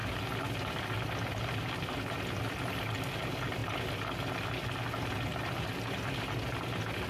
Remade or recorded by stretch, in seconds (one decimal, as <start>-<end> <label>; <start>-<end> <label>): 0.0-7.1 recorded